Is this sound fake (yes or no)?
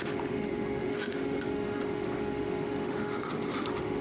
yes